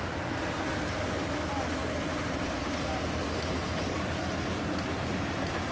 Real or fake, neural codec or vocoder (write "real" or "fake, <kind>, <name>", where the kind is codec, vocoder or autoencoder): real